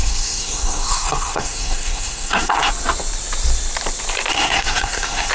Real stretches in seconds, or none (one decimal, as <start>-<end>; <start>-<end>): 2.7-4.3

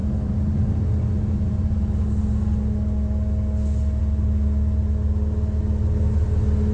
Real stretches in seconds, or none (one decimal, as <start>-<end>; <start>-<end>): 0.0-6.7